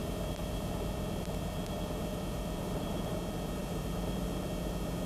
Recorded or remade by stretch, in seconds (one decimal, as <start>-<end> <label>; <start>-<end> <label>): 0.0-5.1 remade